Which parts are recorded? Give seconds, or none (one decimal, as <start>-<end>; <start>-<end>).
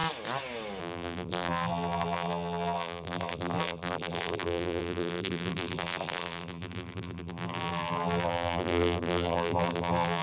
0.0-0.8